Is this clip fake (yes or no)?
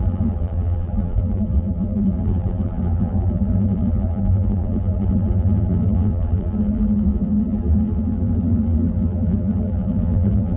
yes